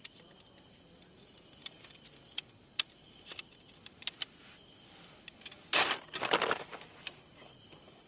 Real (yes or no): yes